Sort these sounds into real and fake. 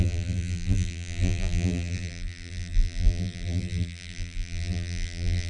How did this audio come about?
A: fake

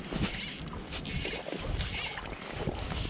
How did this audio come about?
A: real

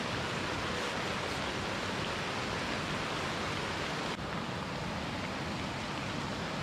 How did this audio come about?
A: real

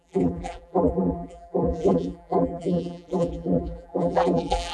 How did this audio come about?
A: fake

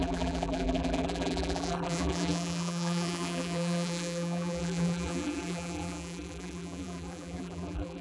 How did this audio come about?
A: fake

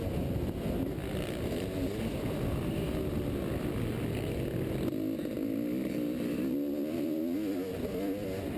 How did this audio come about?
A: real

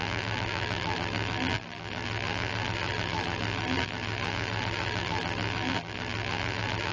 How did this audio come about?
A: fake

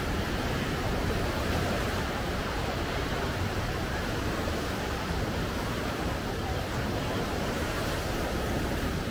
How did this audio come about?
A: fake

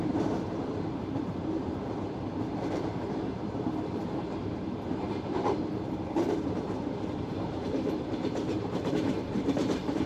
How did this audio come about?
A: fake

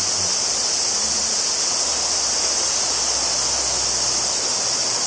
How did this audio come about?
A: real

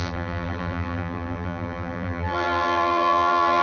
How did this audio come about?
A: fake